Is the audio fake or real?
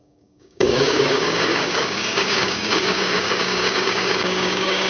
fake